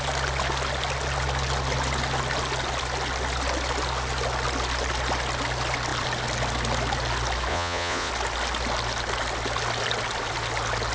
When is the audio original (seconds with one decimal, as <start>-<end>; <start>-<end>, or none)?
0.0-7.5; 8.1-10.9

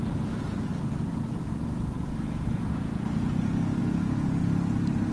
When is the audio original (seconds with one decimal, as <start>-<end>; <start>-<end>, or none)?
4.4-5.1

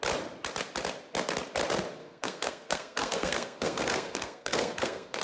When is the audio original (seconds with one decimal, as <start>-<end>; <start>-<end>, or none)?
0.0-2.0

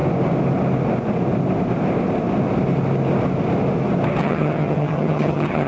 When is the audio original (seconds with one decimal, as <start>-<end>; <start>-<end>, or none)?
0.0-4.2

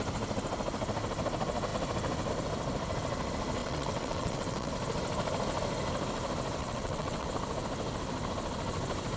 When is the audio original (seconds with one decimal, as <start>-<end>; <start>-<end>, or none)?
0.0-3.6; 4.7-6.6; 7.3-9.2

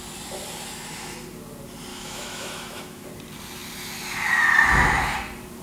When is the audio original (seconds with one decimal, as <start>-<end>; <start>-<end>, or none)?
0.0-1.9; 3.1-5.6

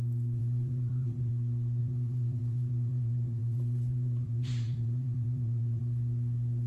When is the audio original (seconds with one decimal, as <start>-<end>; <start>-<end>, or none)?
0.0-0.4; 1.3-1.8; 5.8-6.7

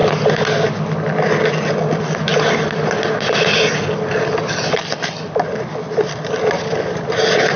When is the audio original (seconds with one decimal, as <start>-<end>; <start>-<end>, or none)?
0.0-7.6